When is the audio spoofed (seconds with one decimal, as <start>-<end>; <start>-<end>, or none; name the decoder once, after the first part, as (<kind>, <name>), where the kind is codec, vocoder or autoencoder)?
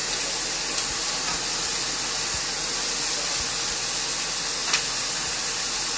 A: none